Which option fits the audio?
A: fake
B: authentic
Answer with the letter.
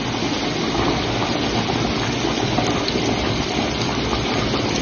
B